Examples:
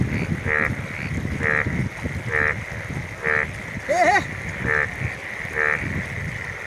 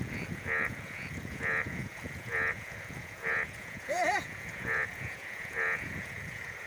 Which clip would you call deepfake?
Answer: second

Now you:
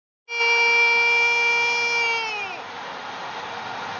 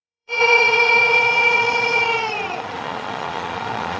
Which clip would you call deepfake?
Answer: second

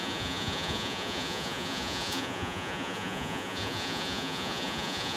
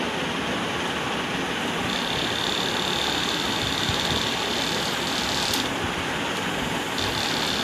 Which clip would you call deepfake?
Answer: first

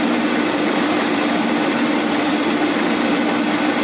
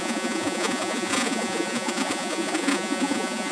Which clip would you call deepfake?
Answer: second